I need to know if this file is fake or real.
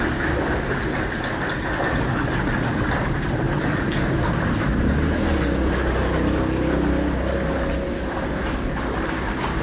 real